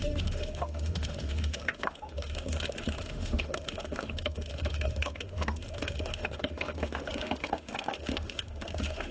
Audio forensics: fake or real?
fake